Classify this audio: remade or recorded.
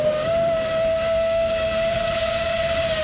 remade